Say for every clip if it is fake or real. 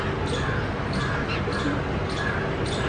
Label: real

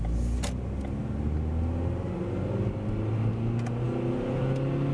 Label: real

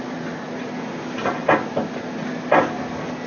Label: real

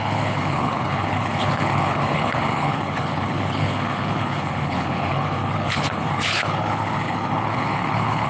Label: fake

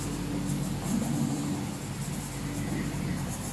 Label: real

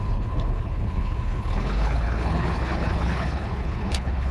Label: fake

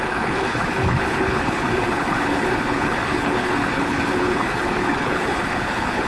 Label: fake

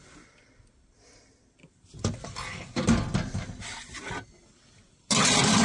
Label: real